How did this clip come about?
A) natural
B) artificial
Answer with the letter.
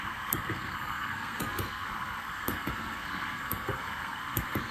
B